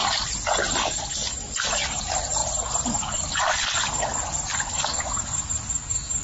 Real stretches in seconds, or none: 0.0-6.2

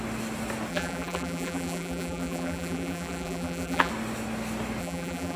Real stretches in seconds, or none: 0.0-0.7; 3.9-4.8